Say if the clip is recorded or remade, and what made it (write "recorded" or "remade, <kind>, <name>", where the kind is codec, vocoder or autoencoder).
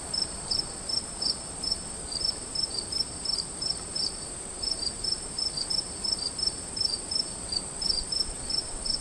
remade, vocoder, BigVGAN v2